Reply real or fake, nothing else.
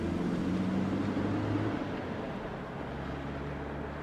real